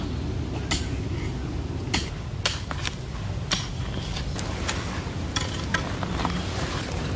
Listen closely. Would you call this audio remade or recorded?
recorded